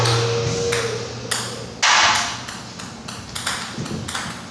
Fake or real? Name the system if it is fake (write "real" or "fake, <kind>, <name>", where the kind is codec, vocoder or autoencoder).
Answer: real